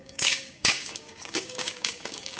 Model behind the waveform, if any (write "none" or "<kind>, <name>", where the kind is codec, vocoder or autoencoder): codec, DAC